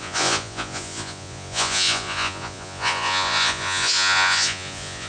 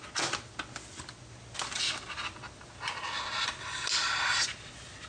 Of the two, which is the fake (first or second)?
first